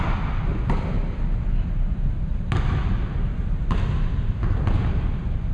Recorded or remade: recorded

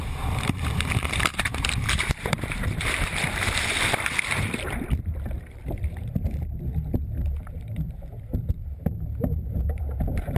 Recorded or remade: remade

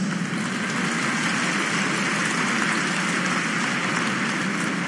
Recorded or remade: recorded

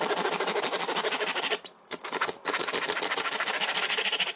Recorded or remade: remade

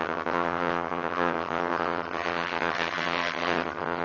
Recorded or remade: remade